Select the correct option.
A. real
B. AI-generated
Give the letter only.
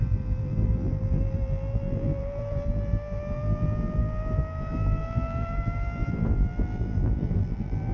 B